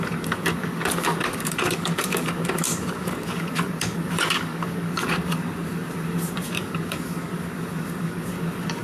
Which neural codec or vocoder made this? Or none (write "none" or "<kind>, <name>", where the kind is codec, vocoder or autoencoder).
codec, DAC